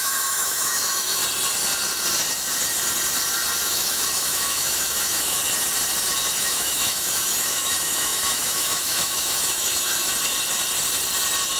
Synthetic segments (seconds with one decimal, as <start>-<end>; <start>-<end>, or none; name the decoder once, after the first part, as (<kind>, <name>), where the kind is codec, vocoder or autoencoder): 0.0-1.2 (autoencoder, DAC-VAE); 3.6-5.4; 6.4-10.0